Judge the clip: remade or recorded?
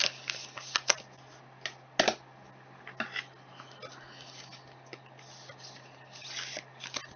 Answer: recorded